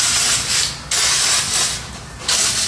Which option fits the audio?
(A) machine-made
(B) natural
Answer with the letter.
B